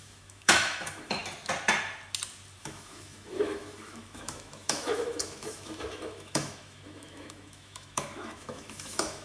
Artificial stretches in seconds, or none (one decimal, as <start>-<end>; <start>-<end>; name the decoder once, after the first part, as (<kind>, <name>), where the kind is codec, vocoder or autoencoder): 0.0-1.2 (autoencoder, DAC-VAE); 2.6-9.2